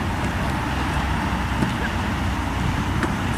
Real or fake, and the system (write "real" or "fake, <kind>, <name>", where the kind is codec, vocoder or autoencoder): real